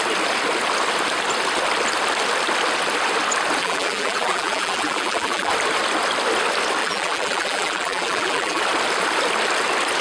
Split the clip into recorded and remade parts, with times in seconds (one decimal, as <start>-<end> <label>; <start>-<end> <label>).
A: 0.0-3.6 recorded; 3.6-5.5 remade; 5.5-6.8 recorded; 6.8-8.6 remade; 8.6-10.0 recorded